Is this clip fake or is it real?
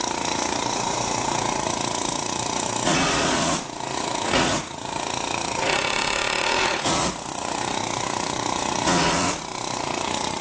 fake